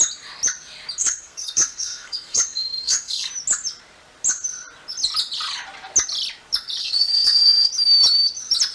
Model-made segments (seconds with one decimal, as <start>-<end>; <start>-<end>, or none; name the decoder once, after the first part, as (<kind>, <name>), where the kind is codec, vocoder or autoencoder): 1.0-3.3 (codec, SNAC); 6.8-7.7